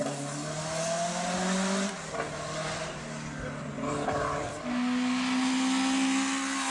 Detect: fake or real real